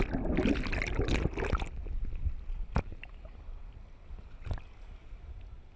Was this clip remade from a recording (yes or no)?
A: no